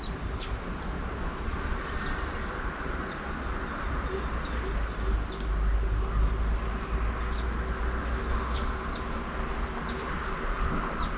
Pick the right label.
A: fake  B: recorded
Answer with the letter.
B